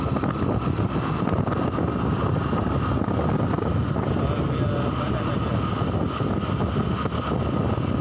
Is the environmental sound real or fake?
real